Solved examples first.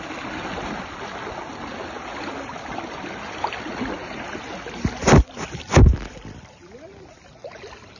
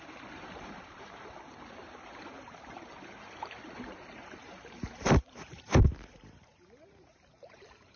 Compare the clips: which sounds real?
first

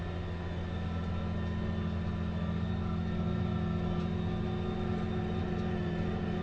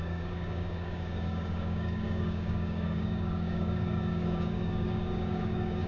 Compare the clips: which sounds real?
first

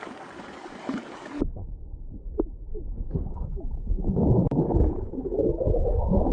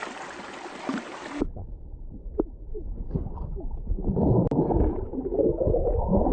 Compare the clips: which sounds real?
second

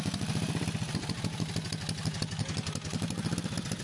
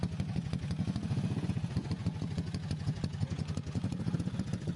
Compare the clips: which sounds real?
first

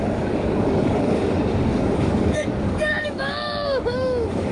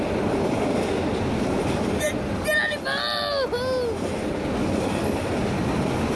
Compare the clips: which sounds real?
second